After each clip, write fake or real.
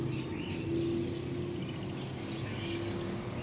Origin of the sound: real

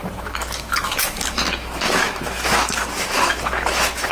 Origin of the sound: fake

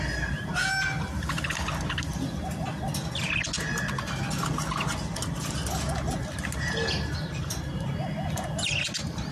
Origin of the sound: real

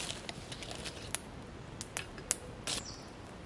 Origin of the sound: real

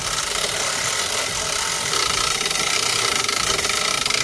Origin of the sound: real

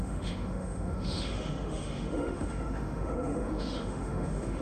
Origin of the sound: fake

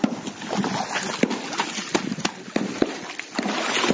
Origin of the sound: real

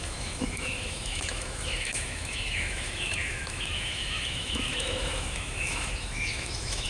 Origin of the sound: fake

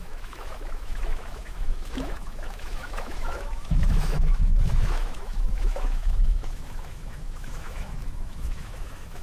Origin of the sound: fake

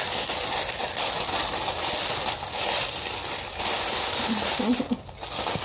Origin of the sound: real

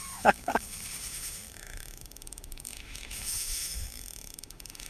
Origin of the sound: fake